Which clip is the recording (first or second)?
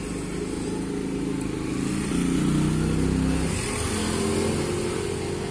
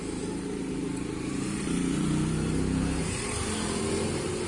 first